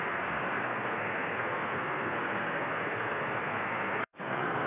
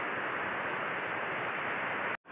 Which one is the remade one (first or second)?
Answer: first